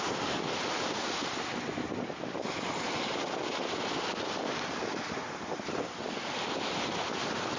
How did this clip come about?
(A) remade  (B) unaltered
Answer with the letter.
B